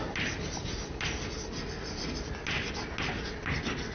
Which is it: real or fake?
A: real